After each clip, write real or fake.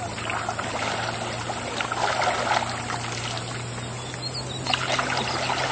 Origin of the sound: real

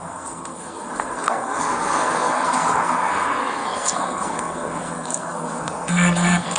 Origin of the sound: fake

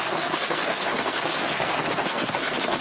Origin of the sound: fake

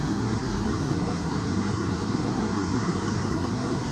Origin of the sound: fake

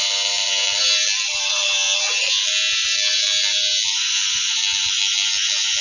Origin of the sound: real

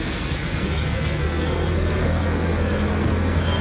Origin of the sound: fake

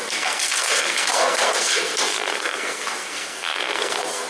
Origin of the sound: fake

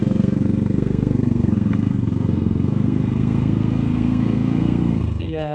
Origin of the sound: fake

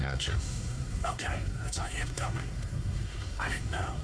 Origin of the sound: fake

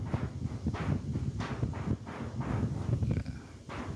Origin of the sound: real